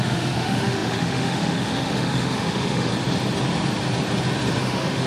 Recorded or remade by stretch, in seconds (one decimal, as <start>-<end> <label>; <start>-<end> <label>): 0.0-2.9 remade; 2.9-4.6 recorded; 4.6-5.1 remade